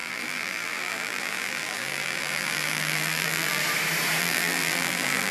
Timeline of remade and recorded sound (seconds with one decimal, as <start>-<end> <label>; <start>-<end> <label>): 0.0-3.6 remade; 3.6-4.2 recorded; 4.2-5.3 remade